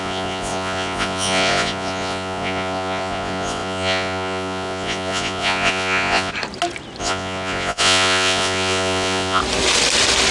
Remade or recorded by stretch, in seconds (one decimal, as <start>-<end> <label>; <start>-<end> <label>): 0.0-6.3 remade; 6.3-7.0 recorded; 7.0-9.4 remade; 9.4-10.3 recorded